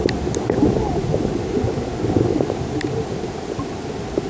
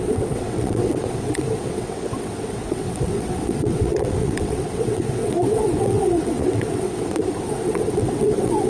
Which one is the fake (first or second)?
second